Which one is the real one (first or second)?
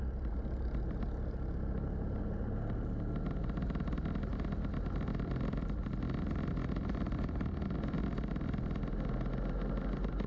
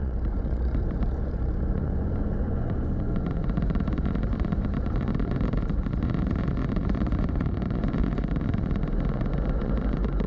first